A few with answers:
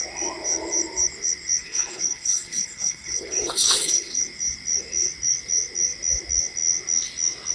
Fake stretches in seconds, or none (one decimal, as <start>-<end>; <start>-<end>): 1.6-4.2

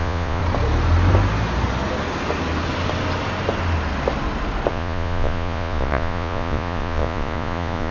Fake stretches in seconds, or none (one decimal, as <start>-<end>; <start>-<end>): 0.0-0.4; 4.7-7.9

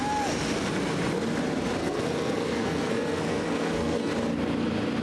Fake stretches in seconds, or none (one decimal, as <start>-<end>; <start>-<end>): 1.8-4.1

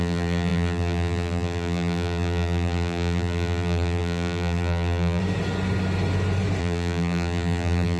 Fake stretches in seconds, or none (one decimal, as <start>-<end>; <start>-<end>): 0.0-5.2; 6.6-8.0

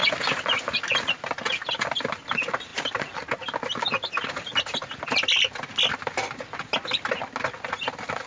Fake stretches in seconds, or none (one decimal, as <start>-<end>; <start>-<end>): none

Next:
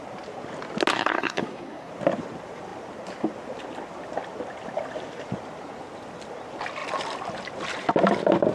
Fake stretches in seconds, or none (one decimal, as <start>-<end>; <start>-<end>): 0.9-1.9

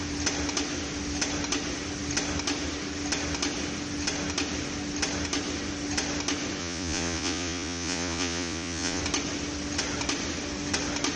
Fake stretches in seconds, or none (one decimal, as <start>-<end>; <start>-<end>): 6.6-9.0

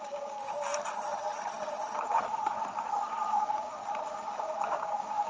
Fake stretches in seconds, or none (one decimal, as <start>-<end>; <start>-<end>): 0.0-0.7; 3.3-3.8; 4.7-5.3